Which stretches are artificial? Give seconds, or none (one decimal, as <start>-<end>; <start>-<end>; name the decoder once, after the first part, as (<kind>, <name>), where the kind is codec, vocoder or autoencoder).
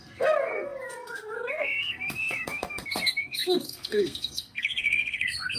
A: 0.0-5.6 (codec, SNAC)